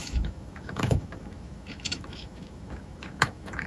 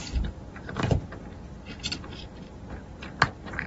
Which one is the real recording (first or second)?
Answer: second